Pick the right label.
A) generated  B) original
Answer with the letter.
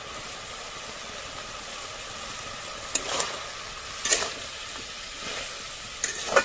B